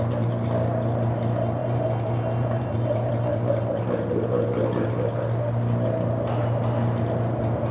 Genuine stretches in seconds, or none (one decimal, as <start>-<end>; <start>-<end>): 0.0-1.6; 3.1-7.7